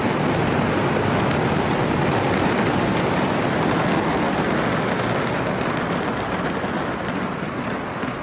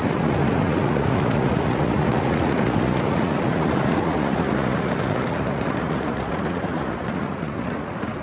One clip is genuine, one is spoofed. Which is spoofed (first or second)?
second